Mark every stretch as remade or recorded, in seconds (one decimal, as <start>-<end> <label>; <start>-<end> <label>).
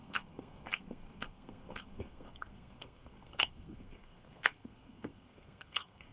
0.0-6.1 remade